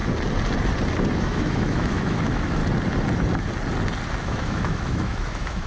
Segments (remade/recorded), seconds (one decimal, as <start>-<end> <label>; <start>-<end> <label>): 0.0-1.2 recorded; 1.2-2.6 remade; 2.6-4.2 recorded; 4.2-5.7 remade